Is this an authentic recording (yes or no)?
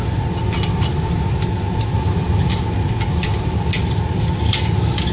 yes